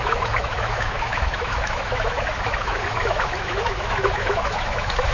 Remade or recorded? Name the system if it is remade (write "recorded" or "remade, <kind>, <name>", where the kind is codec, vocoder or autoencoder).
remade, autoencoder, DAC-VAE